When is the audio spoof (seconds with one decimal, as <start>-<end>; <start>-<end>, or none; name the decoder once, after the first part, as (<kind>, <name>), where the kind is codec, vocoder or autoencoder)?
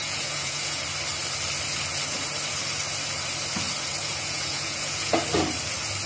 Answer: 0.0-0.8 (vocoder, Vocos); 4.0-5.1